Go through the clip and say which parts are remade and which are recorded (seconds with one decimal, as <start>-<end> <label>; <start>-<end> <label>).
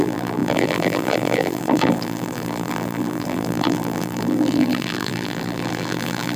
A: 0.0-6.4 remade